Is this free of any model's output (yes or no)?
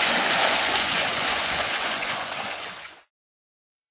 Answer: no